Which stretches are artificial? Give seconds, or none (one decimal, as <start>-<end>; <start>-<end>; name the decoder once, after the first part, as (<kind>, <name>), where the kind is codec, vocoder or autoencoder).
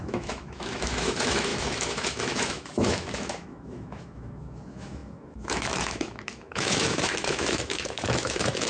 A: 0.0-8.7 (autoencoder, DAC-VAE)